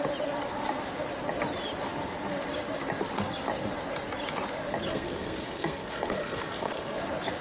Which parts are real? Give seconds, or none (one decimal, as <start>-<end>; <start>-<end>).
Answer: 0.0-4.9; 7.0-7.4